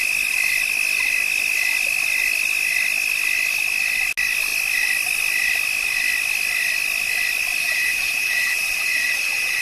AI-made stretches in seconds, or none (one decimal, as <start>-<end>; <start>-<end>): 7.6-9.6